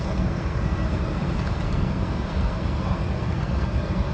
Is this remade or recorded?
remade